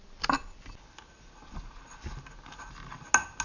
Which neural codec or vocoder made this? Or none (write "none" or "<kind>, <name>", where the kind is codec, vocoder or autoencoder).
none